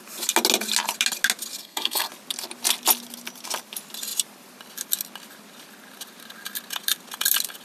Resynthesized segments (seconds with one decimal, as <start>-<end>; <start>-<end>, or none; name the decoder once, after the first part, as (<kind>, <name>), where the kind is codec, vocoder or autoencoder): 1.6-2.1 (codec, SNAC)